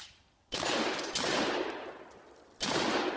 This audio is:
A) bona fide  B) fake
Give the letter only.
A